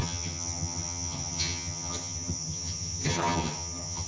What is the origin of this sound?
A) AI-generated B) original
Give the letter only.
A